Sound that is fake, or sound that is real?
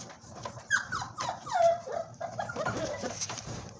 fake